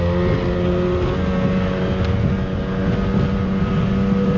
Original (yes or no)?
yes